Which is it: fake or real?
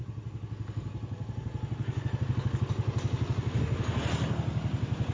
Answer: real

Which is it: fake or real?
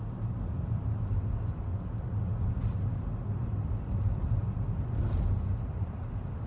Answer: real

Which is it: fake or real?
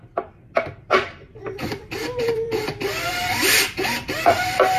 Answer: fake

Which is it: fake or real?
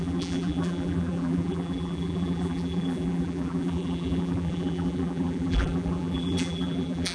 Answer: fake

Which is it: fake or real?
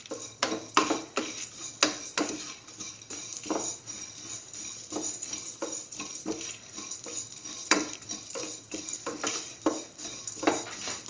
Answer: fake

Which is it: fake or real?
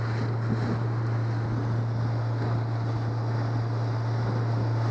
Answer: real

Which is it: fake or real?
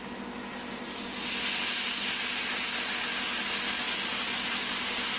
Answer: real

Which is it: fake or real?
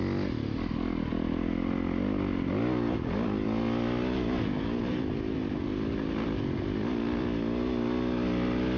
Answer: real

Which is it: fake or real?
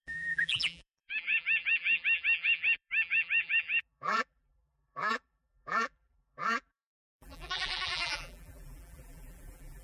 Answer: fake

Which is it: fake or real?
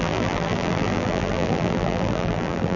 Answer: fake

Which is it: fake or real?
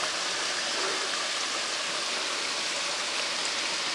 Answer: real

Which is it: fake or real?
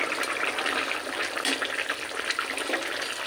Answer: real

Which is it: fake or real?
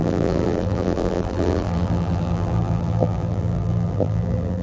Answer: fake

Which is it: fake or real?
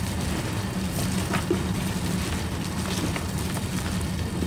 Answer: real